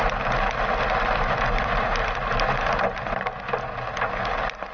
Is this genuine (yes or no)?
yes